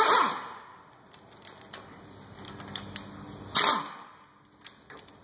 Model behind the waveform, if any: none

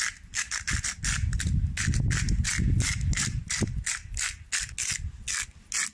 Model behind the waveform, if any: none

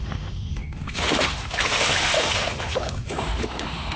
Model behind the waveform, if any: autoencoder, DAC-VAE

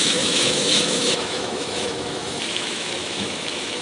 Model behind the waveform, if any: autoencoder, DAC-VAE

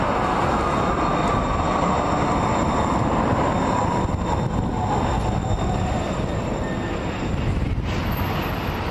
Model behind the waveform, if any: none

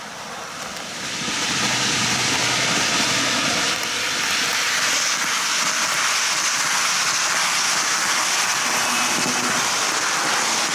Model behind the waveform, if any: none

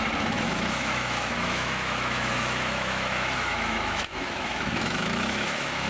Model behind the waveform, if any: autoencoder, DAC-VAE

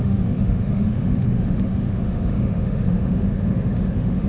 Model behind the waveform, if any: autoencoder, DAC-VAE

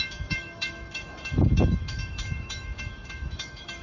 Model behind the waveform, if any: autoencoder, DAC-VAE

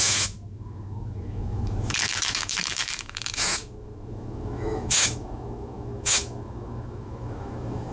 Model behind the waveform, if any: autoencoder, DAC-VAE